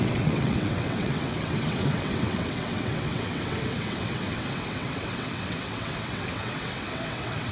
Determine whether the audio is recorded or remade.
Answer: remade